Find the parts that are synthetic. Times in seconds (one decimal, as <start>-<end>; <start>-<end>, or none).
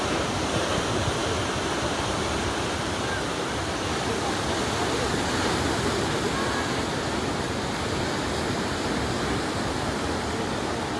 none